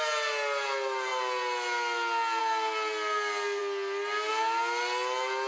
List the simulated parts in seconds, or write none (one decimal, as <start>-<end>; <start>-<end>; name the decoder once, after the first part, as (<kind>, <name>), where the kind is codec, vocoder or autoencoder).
none